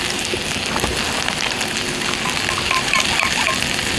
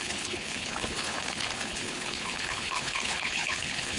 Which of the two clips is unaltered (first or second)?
first